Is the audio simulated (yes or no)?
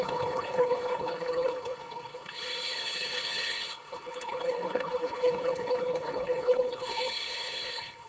yes